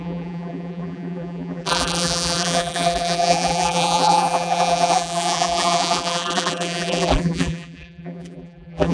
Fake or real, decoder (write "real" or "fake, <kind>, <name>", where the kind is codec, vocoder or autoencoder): fake, vocoder, BigVGAN v2